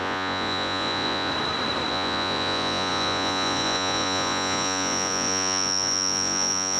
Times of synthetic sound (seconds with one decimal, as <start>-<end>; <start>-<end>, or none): 0.0-1.3; 1.9-6.8

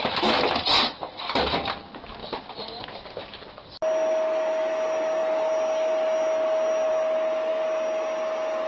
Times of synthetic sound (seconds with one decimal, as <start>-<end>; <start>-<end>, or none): none

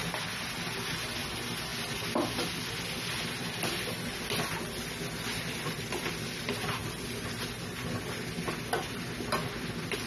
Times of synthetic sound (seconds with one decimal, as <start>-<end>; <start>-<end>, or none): none

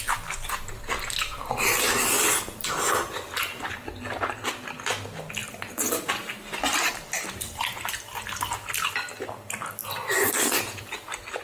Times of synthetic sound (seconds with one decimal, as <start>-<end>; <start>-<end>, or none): none

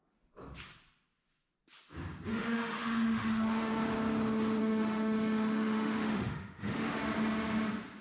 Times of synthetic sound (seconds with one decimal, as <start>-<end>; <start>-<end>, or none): 2.3-3.7; 4.6-7.0

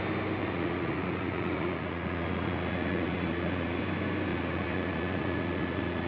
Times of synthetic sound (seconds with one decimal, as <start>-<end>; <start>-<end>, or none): 0.4-3.8; 4.3-6.1